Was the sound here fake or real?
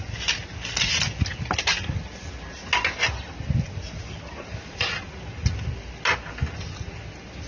real